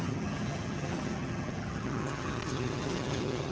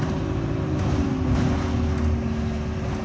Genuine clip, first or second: second